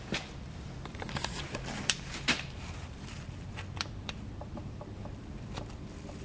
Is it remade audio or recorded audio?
remade